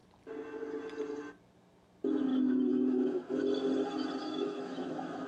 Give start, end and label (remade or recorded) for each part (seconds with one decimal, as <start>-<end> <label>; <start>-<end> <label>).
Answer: 0.0-2.3 recorded; 2.3-3.4 remade; 3.4-4.2 recorded; 4.2-5.3 remade